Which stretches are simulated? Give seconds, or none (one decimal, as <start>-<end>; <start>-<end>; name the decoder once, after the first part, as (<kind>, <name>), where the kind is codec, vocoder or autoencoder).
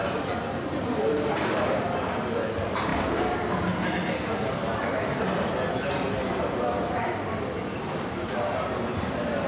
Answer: none